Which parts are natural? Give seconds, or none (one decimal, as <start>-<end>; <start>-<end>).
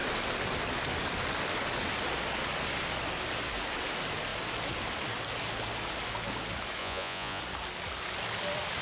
0.0-6.8; 7.4-8.8